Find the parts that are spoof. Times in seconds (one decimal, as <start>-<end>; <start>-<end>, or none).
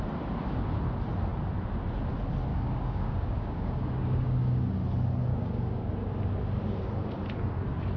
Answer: 2.5-4.7; 5.3-5.9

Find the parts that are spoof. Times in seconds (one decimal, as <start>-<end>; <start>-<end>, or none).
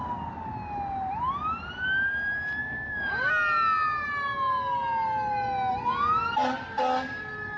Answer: 2.6-3.3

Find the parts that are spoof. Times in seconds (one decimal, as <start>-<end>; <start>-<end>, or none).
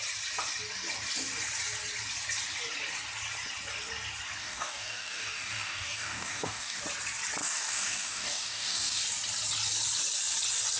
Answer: 4.4-6.8; 7.4-9.0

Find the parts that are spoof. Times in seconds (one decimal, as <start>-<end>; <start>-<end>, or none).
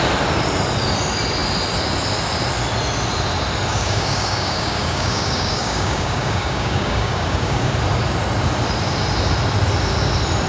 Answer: 3.7-7.7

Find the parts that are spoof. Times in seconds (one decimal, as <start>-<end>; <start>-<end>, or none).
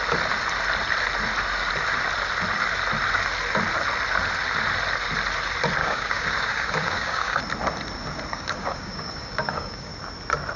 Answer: 5.8-7.4; 8.3-9.9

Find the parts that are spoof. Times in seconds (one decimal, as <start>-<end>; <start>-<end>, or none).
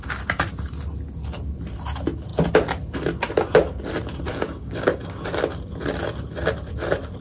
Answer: 4.3-5.3